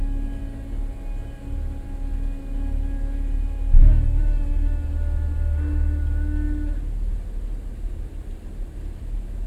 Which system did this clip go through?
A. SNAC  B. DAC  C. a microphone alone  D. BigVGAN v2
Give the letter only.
C